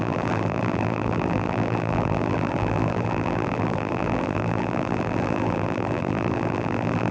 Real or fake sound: fake